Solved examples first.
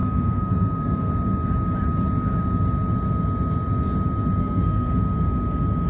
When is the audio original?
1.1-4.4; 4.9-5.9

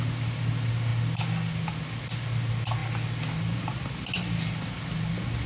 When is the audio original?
0.0-5.5